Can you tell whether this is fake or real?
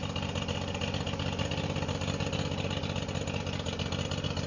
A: real